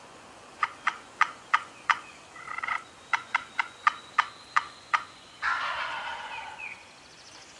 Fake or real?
fake